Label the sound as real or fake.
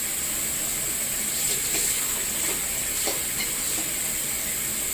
real